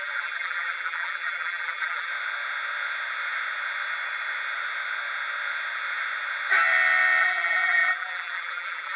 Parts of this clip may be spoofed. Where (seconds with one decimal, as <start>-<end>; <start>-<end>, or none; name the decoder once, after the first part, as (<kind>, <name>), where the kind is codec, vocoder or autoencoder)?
0.0-2.1 (vocoder, BigVGAN v2); 7.2-9.0